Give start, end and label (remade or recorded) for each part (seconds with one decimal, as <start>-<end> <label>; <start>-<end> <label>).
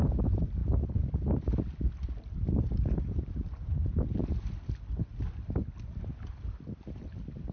0.0-7.5 recorded